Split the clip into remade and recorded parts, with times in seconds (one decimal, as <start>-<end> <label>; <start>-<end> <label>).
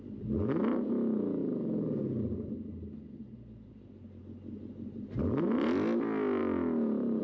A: 0.0-7.2 recorded